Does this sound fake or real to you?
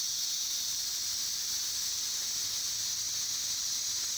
real